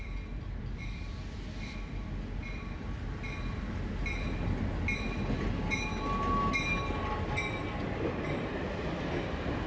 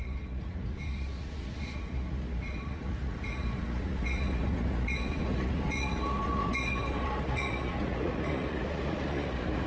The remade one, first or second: second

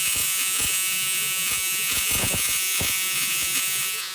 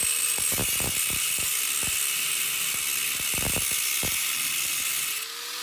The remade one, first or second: first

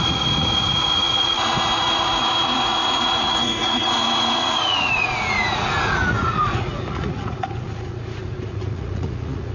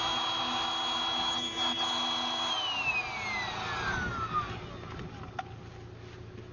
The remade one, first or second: first